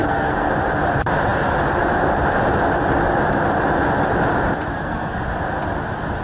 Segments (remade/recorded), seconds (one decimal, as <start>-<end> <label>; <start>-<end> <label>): 0.0-0.5 remade; 0.5-4.7 recorded; 4.7-5.2 remade; 5.2-6.2 recorded